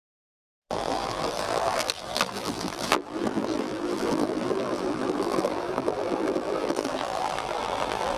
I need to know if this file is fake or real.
fake